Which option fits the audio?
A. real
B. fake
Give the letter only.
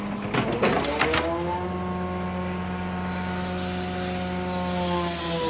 A